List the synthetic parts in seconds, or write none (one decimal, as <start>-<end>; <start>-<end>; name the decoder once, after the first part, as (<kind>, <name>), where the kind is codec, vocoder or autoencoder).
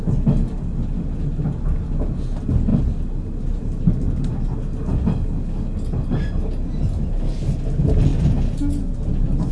none